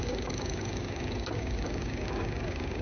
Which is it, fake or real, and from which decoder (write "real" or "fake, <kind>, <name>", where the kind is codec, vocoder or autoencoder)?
fake, codec, DAC